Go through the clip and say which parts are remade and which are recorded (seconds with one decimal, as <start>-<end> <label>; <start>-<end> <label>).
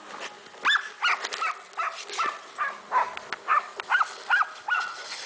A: 0.0-5.3 recorded